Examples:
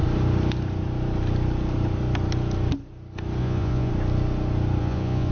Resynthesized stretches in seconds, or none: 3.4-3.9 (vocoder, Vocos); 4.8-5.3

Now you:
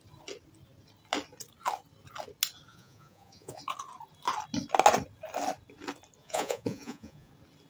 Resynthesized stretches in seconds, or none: 2.7-3.6 (vocoder, Vocos); 6.2-7.3

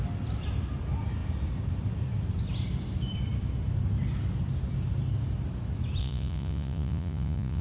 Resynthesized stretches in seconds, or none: 6.0-7.6 (vocoder, Vocos)

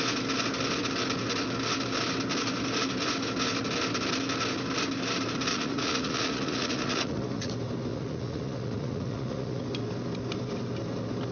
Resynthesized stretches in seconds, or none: 5.5-7.5 (vocoder, Vocos); 7.9-9.6

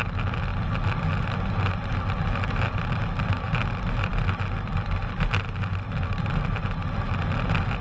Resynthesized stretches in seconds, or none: none